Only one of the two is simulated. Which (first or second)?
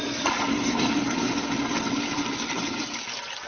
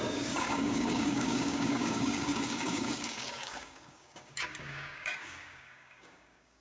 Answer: second